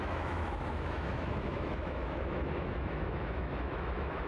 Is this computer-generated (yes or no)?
yes